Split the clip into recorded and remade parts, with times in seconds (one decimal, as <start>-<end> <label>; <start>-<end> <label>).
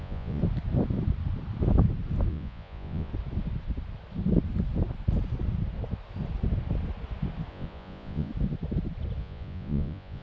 0.0-0.4 remade; 0.4-2.3 recorded; 2.3-3.1 remade; 3.1-7.5 recorded; 7.5-8.3 remade; 8.3-9.2 recorded; 9.2-10.2 remade